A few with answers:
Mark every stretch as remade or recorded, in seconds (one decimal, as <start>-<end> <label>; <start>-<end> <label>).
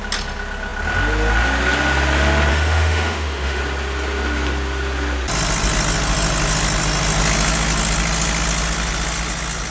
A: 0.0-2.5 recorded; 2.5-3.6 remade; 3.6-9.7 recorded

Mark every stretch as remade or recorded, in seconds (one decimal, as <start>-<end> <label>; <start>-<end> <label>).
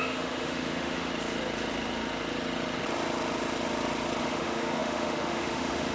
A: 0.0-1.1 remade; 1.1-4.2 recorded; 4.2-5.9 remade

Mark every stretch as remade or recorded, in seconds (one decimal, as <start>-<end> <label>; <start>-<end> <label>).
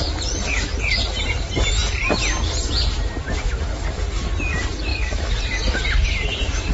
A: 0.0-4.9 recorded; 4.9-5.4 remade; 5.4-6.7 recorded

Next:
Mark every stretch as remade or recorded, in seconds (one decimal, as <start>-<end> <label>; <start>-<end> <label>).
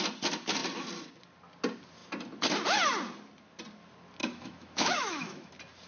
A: 0.0-4.2 recorded; 4.2-5.5 remade; 5.5-5.9 recorded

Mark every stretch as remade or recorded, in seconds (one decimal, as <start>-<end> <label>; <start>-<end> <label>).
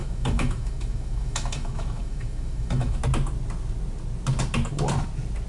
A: 0.0-3.0 remade; 3.0-5.5 recorded